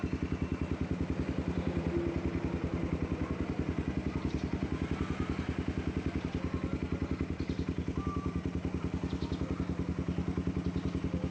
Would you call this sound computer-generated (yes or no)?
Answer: no